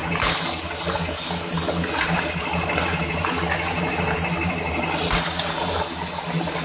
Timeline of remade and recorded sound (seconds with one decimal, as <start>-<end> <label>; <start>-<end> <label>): 0.0-6.6 recorded